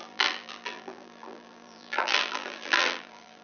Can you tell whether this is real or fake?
fake